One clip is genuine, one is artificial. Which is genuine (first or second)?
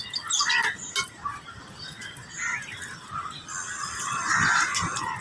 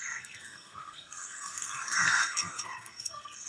first